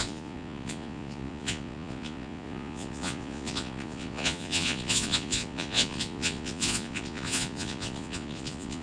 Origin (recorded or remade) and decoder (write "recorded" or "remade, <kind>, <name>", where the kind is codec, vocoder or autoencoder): remade, vocoder, Vocos